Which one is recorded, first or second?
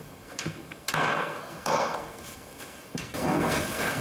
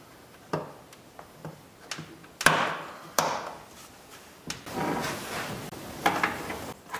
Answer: second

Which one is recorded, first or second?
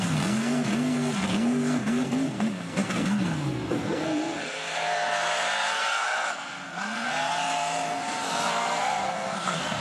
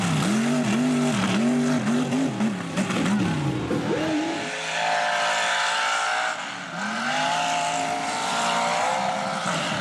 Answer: second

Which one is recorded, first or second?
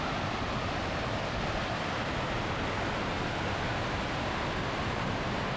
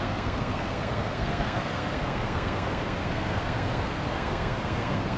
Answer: first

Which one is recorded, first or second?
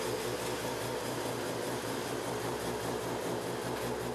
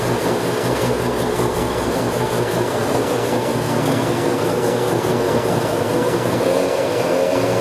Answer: first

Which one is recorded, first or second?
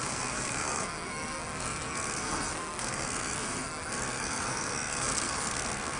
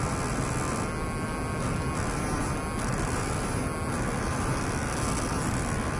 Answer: second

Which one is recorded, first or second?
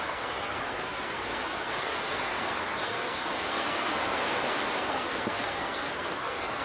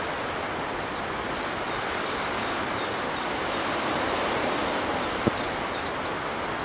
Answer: second